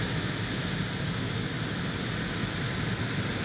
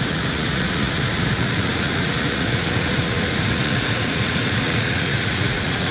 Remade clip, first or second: second